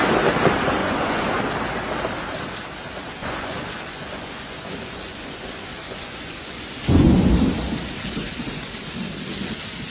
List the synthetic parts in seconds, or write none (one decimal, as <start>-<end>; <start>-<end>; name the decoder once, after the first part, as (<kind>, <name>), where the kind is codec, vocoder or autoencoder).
0.8-1.4 (vocoder, Vocos); 3.2-7.3